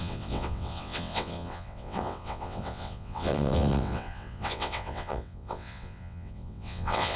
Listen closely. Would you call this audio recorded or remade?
remade